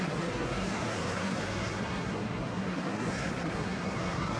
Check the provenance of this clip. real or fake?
fake